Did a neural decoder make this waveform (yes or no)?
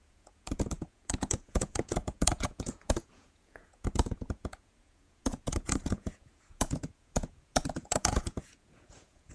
yes